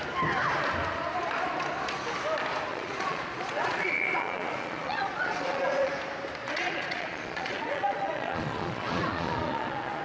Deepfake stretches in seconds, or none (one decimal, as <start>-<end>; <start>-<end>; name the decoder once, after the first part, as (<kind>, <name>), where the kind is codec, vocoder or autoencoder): 2.7-5.9 (vocoder, Vocos); 6.4-10.0